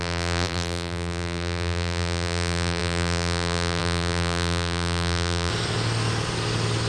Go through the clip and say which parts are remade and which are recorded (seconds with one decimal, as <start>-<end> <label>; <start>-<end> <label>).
0.0-5.5 remade; 5.5-6.9 recorded